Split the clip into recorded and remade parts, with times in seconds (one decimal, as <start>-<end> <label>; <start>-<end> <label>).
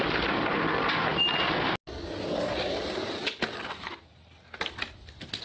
0.0-5.4 recorded